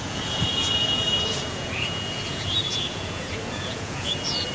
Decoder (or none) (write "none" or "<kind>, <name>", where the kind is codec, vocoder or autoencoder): vocoder, Vocos